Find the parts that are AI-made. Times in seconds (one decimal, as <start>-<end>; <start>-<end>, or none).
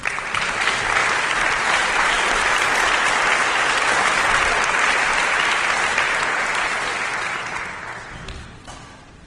0.0-0.5; 1.0-2.1